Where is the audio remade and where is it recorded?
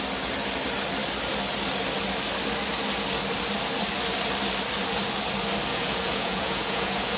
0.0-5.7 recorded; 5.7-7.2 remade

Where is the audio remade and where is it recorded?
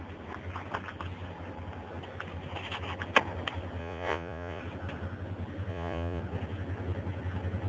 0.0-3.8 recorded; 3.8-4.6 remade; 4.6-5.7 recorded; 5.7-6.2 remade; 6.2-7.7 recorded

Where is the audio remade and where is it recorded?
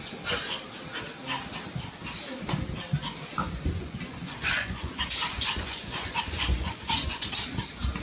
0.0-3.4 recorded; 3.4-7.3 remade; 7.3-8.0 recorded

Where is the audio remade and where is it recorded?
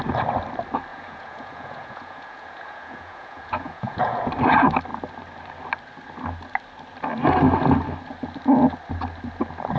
0.0-0.9 recorded; 0.9-4.3 remade; 4.3-9.8 recorded